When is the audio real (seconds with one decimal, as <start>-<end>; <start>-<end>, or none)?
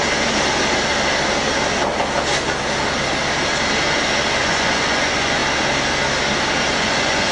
0.0-4.4; 5.4-6.7